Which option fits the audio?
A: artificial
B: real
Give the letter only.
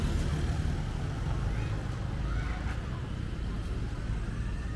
B